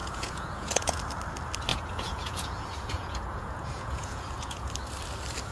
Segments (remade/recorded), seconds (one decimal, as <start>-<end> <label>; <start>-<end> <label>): 0.0-1.0 remade; 1.0-1.7 recorded; 1.7-4.7 remade; 4.7-5.5 recorded